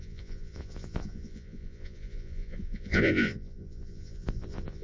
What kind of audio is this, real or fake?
fake